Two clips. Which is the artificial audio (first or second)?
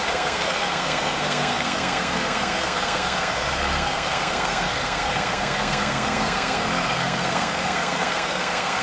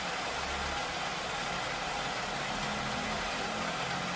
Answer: first